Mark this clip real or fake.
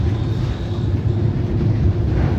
real